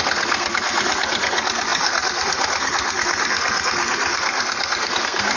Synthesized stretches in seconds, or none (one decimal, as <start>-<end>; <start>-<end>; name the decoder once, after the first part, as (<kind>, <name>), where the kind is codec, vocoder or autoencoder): 0.0-5.4 (codec, SNAC)